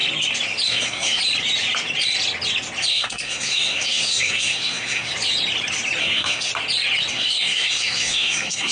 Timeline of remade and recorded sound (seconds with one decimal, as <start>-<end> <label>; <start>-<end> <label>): 0.0-0.7 recorded; 0.7-1.2 remade; 1.2-2.9 recorded; 2.9-5.1 remade; 5.1-6.0 recorded; 6.0-6.5 remade; 6.5-7.1 recorded; 7.1-8.7 remade